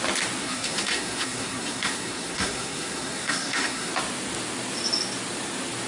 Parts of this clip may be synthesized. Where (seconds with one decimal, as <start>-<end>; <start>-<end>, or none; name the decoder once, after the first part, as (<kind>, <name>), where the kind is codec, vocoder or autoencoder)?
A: 0.4-3.9 (codec, SNAC)